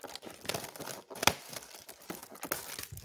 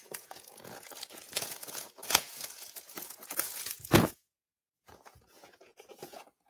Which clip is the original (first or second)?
first